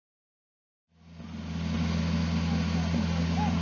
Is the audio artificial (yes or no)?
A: no